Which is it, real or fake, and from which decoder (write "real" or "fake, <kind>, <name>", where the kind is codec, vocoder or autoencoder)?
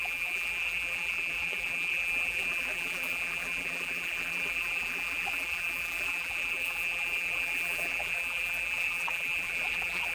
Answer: fake, vocoder, BigVGAN v2